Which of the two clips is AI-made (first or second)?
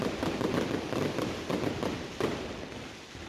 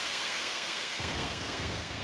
second